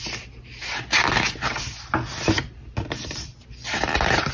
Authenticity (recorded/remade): recorded